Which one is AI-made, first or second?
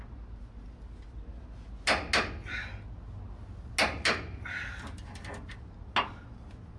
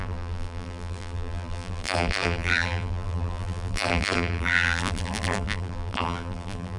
second